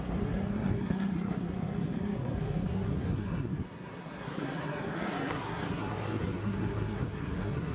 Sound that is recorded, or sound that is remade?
remade